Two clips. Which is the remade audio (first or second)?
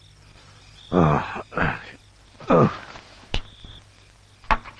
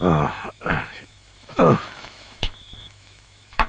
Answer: second